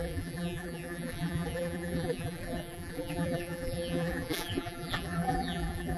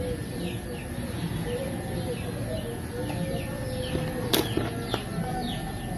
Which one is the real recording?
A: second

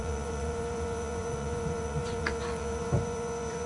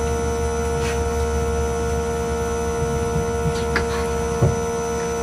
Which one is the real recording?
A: second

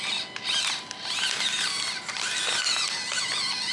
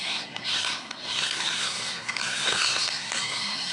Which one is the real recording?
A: first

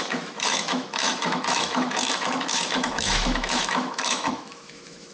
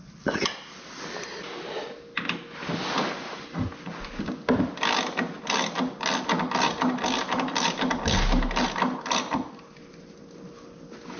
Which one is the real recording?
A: second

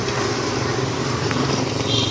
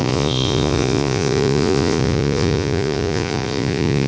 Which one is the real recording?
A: first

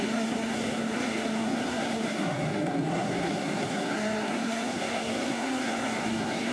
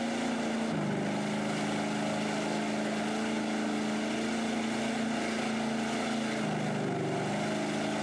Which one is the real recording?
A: second